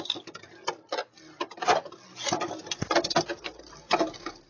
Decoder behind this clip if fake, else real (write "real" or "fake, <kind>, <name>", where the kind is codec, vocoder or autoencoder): real